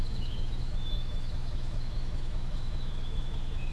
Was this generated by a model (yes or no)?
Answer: yes